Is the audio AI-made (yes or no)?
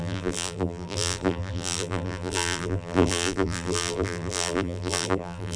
yes